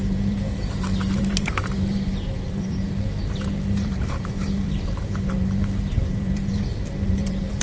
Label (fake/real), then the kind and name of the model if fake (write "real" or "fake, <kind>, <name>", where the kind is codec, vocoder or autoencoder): fake, vocoder, BigVGAN v2